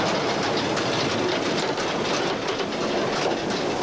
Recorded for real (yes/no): yes